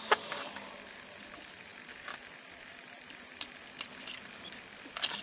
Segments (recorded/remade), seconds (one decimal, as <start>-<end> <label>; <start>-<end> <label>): 0.0-5.2 recorded